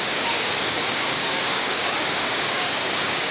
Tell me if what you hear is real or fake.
fake